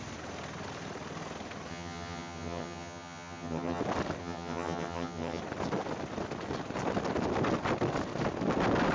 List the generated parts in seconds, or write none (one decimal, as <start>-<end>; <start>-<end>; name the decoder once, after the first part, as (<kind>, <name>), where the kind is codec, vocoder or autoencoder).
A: 1.7-3.8 (vocoder, HiFi-GAN); 4.2-5.4